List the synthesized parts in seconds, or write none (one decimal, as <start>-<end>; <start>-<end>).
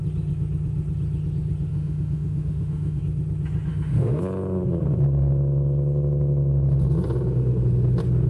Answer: 1.7-3.0; 3.7-4.2